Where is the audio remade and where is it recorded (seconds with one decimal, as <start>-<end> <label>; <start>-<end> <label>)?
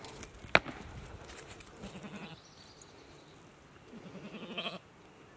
0.0-5.4 recorded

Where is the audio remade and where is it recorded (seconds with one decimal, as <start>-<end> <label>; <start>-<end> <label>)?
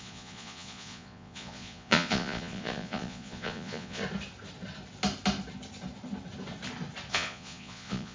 0.0-4.0 remade; 4.0-7.1 recorded; 7.1-8.1 remade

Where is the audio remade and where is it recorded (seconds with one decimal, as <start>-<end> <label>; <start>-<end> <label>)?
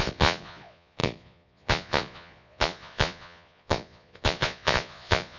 0.0-5.4 remade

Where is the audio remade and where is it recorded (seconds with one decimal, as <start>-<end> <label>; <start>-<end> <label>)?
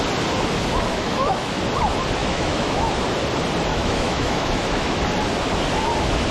0.0-0.9 recorded; 0.9-1.6 remade; 1.6-2.2 recorded; 2.2-2.9 remade; 2.9-3.7 recorded; 3.7-5.0 remade; 5.0-6.3 recorded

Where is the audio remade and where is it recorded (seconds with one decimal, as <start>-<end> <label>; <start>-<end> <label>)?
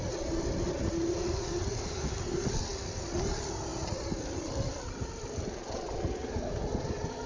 0.0-7.3 recorded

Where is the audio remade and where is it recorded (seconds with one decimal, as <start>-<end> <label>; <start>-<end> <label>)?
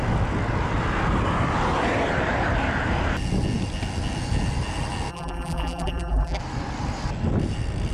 0.0-5.1 recorded; 5.1-6.4 remade; 6.4-7.9 recorded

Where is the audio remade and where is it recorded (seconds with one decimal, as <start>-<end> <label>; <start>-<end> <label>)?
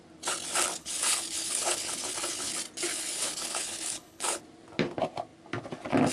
0.0-0.8 recorded; 0.8-2.5 remade; 2.5-2.9 recorded; 2.9-4.4 remade; 4.4-6.1 recorded